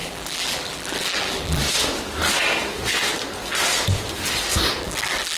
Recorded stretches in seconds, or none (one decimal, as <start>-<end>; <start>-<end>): 1.6-4.8